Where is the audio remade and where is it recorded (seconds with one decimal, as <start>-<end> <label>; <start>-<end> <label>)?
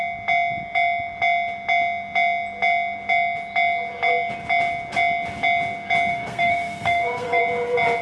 0.0-6.1 recorded; 6.1-7.4 remade; 7.4-8.0 recorded